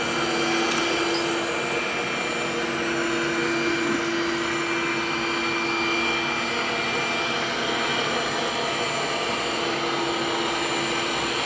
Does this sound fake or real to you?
real